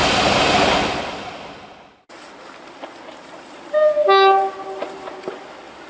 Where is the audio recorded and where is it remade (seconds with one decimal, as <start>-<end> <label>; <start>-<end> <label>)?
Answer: 0.0-5.9 recorded